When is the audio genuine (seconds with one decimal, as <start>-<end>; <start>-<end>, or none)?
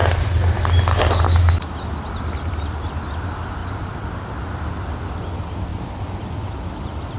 0.0-7.2